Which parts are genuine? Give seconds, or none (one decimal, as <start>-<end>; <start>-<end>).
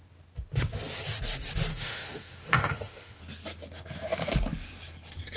0.0-1.7; 3.2-5.4